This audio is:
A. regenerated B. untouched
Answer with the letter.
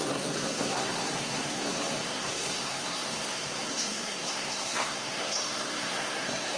A